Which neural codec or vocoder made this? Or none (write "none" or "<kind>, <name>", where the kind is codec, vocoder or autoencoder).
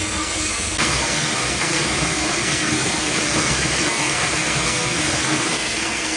codec, SNAC